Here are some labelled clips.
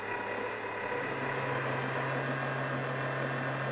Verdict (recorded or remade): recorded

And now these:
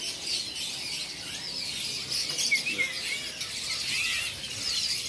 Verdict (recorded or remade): recorded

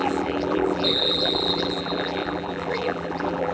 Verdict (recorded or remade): remade